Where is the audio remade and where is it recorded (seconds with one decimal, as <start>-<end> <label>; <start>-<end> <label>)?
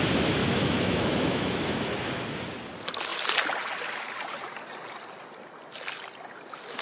0.0-0.4 recorded; 0.4-2.2 remade; 2.2-6.8 recorded